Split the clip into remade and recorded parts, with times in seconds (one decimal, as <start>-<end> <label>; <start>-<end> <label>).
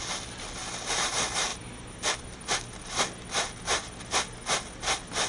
0.0-5.3 recorded